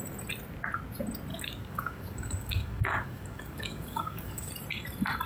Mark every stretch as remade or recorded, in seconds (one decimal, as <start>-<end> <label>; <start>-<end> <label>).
0.0-1.3 recorded; 1.3-4.5 remade; 4.5-5.3 recorded